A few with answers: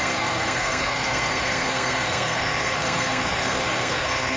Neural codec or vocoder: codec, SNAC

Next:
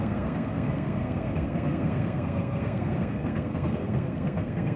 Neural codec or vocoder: codec, SNAC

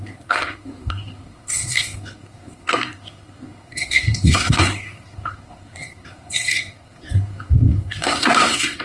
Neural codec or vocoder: codec, SNAC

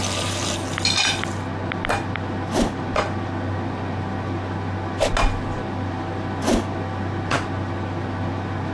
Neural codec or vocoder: none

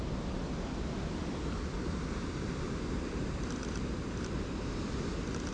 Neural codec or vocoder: none